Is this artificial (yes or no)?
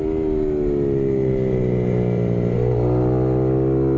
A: no